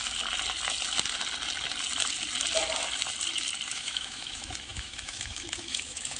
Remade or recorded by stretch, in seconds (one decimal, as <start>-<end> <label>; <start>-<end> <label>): 0.0-3.7 recorded; 3.7-6.2 remade